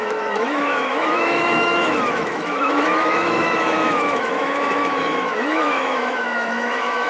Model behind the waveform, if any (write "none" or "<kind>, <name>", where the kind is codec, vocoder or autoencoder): autoencoder, DAC-VAE